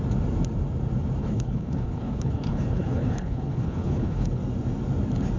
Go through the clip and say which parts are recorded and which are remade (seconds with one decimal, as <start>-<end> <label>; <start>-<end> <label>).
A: 0.0-1.2 recorded; 1.2-4.4 remade; 4.4-5.4 recorded